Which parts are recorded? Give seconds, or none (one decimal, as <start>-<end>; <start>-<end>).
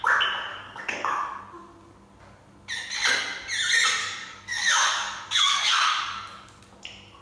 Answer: 0.0-0.5; 1.4-4.0; 6.6-7.2